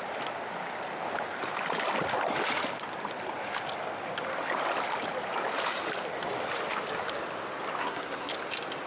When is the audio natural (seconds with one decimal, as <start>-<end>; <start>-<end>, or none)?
0.0-7.8; 8.3-8.9